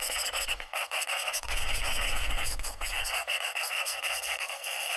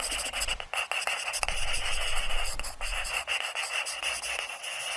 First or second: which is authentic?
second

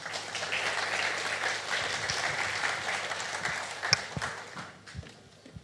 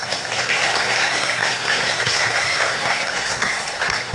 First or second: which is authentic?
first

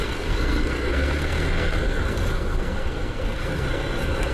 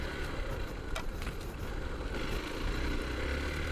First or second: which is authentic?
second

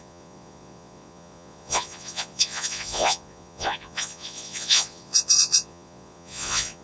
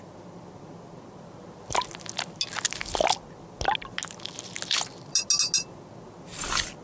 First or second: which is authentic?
second